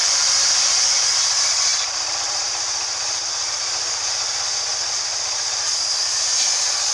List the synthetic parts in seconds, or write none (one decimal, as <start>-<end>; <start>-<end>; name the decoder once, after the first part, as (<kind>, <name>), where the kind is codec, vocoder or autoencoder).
0.0-1.0 (vocoder, BigVGAN v2); 1.7-4.4